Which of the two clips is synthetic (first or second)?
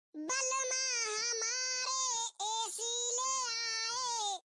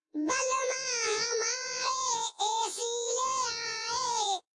second